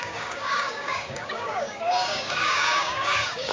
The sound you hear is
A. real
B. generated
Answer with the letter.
B